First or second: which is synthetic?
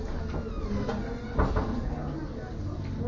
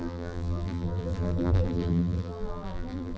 second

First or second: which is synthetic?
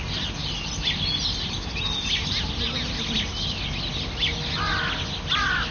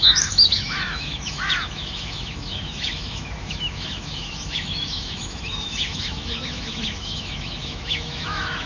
second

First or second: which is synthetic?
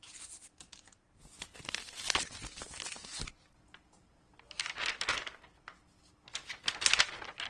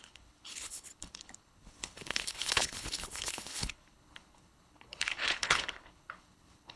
second